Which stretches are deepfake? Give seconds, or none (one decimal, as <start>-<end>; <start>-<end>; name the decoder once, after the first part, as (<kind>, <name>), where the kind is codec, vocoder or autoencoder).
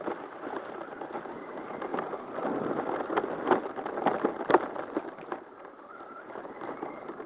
none